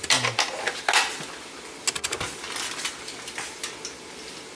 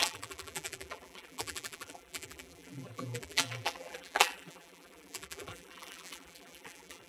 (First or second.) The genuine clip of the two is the first